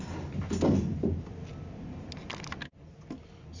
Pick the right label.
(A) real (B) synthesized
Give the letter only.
A